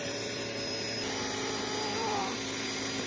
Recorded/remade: remade